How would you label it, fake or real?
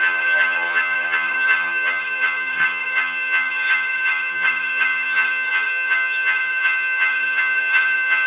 fake